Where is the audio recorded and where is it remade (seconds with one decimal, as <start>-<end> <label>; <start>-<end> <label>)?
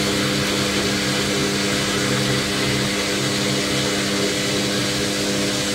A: 0.0-5.7 recorded